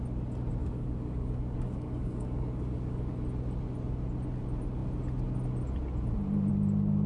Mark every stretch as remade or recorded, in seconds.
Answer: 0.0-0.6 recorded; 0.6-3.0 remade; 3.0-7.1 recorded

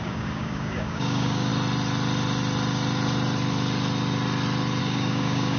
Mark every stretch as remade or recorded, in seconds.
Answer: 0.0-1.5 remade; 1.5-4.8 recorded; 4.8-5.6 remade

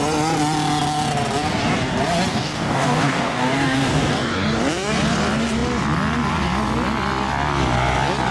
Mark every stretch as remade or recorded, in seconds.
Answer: 0.0-2.3 recorded; 2.3-4.6 remade; 4.6-8.3 recorded